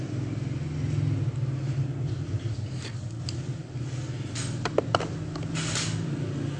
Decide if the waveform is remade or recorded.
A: recorded